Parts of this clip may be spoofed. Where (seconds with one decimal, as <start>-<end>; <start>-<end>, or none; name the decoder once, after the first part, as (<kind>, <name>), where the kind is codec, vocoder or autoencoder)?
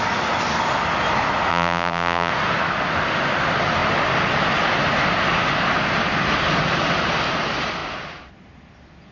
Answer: 1.5-2.3 (vocoder, BigVGAN v2)